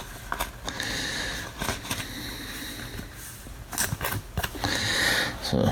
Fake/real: real